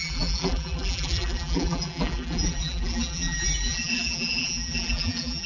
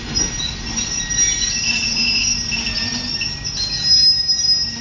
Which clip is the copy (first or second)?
first